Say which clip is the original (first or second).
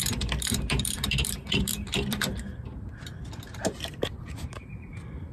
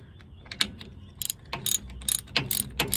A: second